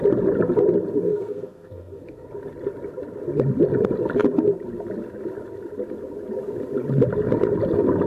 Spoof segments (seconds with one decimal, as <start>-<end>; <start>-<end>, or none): 1.1-2.3